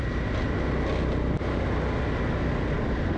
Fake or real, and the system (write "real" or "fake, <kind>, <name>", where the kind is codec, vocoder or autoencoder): real